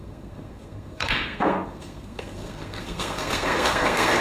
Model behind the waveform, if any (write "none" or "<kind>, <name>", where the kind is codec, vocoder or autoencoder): codec, SNAC